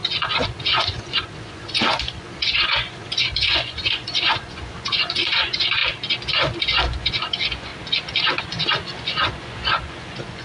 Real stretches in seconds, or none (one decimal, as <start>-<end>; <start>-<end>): 5.8-6.3; 7.7-8.4